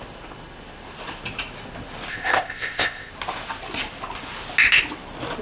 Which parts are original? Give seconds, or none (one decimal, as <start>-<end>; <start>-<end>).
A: 0.0-2.1; 3.1-5.4